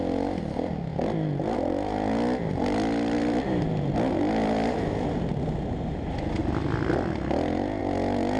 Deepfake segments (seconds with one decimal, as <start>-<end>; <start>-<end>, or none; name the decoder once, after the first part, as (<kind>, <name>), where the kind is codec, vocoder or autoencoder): none